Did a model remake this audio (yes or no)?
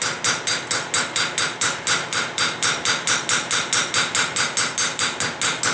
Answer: no